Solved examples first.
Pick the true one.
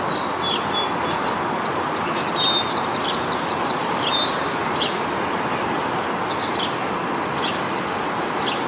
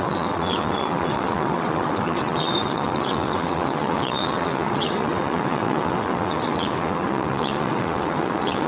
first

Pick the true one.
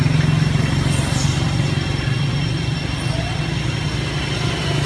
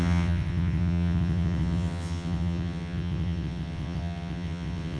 first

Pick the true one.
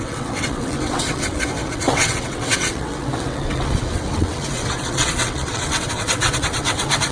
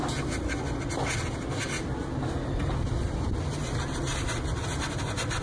second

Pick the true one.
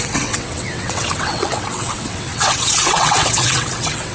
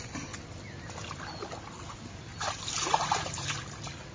second